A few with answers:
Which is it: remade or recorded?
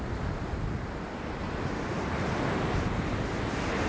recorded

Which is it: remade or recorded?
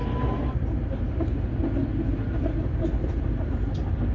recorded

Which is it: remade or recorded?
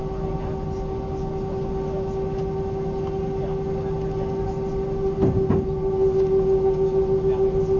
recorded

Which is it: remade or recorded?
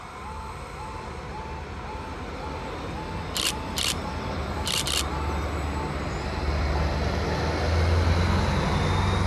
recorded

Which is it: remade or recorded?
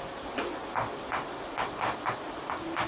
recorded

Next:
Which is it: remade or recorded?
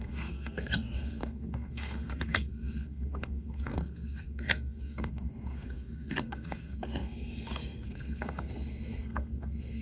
remade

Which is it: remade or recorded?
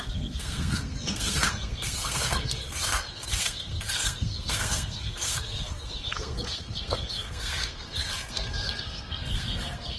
remade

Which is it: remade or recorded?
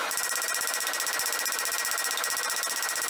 remade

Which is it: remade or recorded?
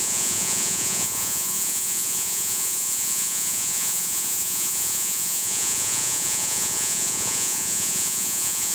remade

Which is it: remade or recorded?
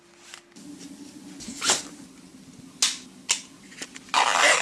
recorded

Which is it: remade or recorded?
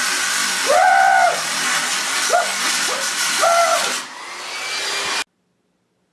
recorded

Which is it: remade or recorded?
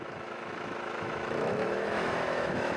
remade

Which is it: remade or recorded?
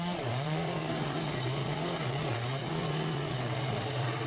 remade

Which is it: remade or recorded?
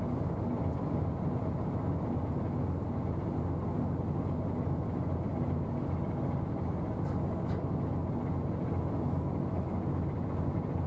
recorded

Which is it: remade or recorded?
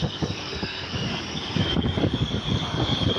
remade